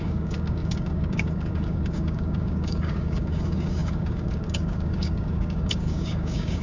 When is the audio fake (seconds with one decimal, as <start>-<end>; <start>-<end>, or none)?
0.0-6.6